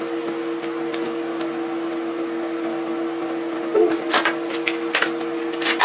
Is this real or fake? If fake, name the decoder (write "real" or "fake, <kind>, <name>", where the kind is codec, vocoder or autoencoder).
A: real